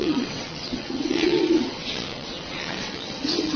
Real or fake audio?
fake